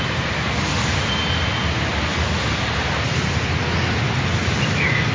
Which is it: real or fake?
real